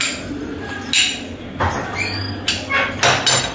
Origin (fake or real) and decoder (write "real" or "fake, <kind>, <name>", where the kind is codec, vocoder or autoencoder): real